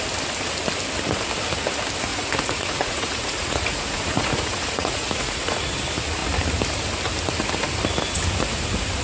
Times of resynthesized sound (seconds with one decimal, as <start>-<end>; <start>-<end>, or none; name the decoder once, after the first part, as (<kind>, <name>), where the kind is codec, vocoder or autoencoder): 2.1-5.7 (vocoder, Vocos)